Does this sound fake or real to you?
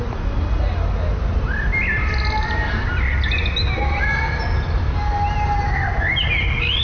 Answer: real